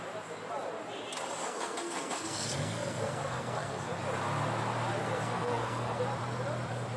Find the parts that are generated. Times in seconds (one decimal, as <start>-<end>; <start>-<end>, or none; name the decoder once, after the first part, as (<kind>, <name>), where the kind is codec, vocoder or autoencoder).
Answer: 1.4-4.0 (codec, SNAC); 5.0-6.0